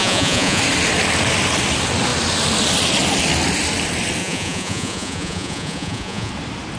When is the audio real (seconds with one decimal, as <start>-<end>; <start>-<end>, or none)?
0.6-4.2; 6.3-6.8